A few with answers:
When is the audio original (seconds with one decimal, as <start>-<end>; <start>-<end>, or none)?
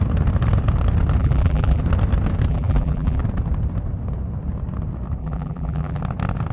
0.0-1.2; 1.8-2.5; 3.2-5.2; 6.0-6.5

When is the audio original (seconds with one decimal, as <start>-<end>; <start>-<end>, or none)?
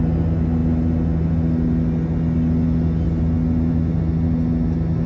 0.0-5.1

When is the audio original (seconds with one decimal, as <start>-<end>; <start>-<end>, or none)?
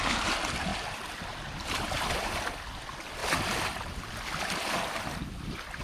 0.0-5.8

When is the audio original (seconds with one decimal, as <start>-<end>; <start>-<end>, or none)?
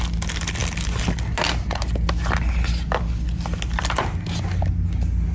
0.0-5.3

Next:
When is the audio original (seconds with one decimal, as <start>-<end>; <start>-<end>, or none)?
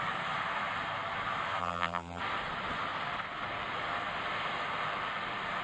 0.0-1.6; 2.2-5.6